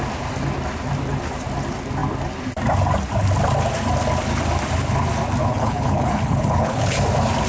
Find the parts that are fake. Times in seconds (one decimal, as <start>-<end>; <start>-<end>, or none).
5.4-7.0